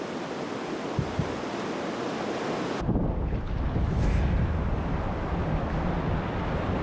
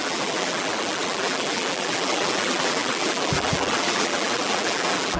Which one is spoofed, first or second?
second